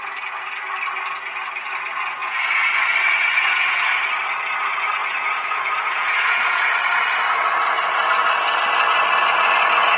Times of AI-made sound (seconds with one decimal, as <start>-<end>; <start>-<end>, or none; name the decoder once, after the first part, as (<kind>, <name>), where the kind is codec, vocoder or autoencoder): 2.2-3.7 (vocoder, Vocos); 5.0-6.7